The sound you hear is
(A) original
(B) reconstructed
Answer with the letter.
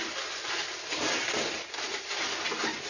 A